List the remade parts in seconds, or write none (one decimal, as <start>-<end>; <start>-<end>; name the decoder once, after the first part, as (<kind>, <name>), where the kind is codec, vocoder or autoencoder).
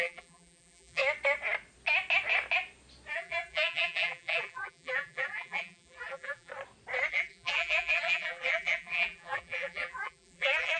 0.0-1.0 (vocoder, BigVGAN v2); 3.1-6.5; 7.1-10.8